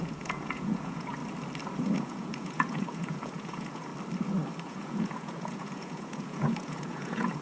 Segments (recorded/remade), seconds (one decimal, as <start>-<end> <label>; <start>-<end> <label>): 0.0-1.2 remade; 1.2-1.8 recorded; 1.8-3.9 remade; 3.9-4.6 recorded; 4.6-7.4 remade